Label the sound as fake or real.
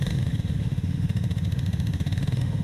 fake